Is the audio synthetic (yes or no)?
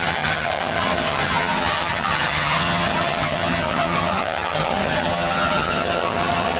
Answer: yes